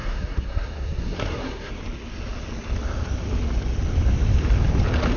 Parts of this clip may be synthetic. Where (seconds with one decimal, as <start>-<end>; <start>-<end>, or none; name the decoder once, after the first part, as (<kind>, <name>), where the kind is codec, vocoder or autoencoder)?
0.0-1.7 (codec, SNAC)